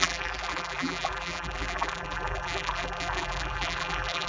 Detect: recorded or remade remade